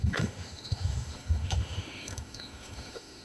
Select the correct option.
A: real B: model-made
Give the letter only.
B